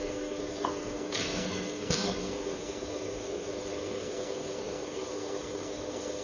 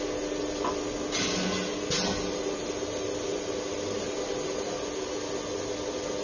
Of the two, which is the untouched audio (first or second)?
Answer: second